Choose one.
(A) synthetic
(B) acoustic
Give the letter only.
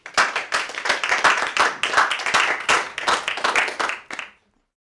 B